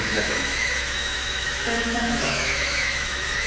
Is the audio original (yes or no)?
no